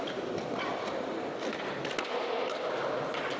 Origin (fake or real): real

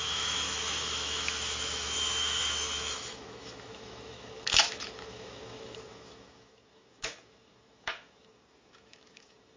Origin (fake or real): fake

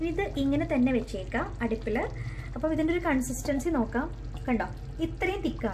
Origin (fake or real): real